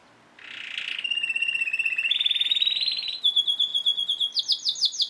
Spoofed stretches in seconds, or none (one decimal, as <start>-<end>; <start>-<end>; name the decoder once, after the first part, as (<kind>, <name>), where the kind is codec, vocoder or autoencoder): none

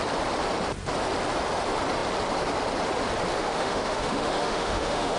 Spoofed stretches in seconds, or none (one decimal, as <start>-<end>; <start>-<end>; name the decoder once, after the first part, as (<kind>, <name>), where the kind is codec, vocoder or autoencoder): 3.4-5.2 (autoencoder, DAC-VAE)

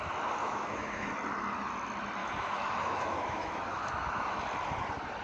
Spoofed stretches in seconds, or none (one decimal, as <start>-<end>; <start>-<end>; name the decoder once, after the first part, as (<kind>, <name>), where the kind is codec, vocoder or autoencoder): 0.4-1.1 (autoencoder, DAC-VAE); 2.2-4.4

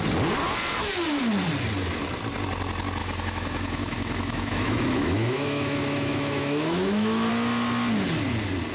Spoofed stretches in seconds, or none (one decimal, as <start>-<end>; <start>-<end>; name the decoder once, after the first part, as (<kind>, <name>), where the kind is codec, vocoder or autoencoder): 3.0-7.3 (autoencoder, DAC-VAE)

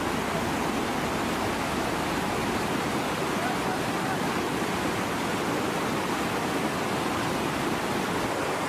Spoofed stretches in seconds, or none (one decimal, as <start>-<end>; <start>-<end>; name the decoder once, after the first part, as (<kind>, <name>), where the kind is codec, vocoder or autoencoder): none

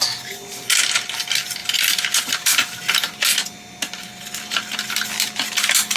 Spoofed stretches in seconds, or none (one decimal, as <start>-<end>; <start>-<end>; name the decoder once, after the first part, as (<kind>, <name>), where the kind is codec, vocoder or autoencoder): none

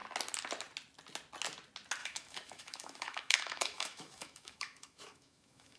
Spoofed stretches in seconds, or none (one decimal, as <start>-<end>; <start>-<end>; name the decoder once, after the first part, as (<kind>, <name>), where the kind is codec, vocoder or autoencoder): 2.0-5.8 (autoencoder, DAC-VAE)

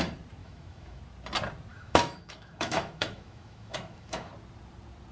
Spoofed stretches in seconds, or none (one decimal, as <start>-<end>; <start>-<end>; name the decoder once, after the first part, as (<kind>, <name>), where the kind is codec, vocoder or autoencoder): 0.4-1.0 (autoencoder, DAC-VAE); 1.7-4.3